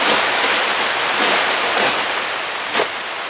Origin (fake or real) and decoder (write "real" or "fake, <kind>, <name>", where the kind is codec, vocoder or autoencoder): real